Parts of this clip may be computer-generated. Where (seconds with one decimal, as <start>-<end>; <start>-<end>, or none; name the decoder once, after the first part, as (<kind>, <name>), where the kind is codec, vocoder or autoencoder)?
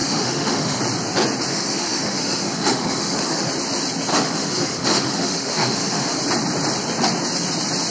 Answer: 0.0-0.8 (autoencoder, DAC-VAE); 1.5-3.5; 4.1-6.2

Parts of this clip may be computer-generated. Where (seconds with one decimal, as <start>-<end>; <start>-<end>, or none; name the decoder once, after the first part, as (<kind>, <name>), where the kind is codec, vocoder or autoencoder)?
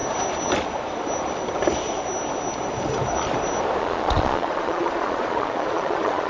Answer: 3.8-6.3 (vocoder, Vocos)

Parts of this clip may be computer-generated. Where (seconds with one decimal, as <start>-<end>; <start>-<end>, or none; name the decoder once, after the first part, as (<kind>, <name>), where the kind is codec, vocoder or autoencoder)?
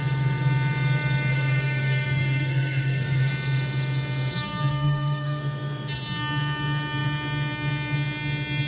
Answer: 1.3-3.3 (codec, SNAC); 4.7-5.4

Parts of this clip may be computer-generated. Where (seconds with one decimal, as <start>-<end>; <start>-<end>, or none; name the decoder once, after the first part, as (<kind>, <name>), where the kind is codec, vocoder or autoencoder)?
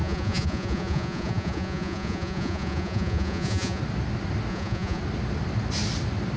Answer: 0.0-3.8 (vocoder, Vocos); 4.5-5.0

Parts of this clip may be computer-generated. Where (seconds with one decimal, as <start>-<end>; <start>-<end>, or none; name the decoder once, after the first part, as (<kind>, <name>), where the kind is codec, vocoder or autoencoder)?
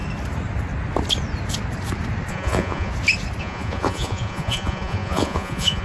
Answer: 2.3-2.9 (vocoder, Vocos); 3.4-5.8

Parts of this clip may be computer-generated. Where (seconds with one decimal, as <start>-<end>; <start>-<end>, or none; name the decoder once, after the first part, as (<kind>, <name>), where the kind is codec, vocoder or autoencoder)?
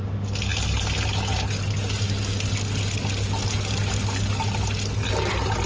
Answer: none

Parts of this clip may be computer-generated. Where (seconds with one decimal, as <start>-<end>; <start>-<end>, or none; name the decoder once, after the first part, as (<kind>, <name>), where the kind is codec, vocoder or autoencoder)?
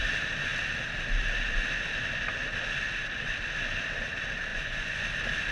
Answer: 4.5-5.0 (vocoder, Vocos)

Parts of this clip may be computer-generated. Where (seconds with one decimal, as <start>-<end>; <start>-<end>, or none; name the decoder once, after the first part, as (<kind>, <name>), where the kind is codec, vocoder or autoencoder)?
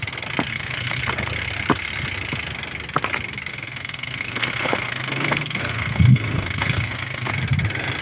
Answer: 0.5-1.0 (codec, SNAC); 3.5-7.3